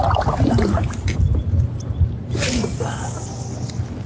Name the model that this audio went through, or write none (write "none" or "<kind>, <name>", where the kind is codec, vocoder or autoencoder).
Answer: none